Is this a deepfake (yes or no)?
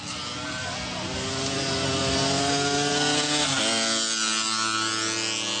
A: no